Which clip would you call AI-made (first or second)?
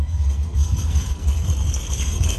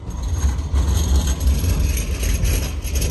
first